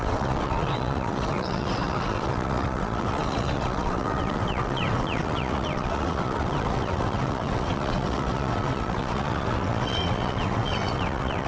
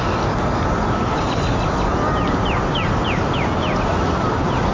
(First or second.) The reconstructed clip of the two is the first